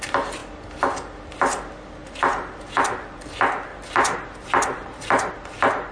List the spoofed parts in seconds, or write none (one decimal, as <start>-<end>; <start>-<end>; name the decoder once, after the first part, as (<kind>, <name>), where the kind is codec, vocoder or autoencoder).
2.0-2.8 (vocoder, BigVGAN v2); 3.7-5.3